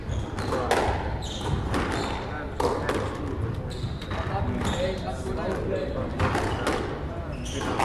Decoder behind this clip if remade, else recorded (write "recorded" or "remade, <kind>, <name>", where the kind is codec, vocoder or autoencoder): recorded